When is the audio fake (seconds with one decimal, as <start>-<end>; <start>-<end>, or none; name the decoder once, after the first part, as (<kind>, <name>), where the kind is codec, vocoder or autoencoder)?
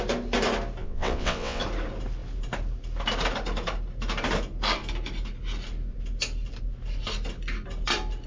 0.8-1.6 (vocoder, WaveNeXt)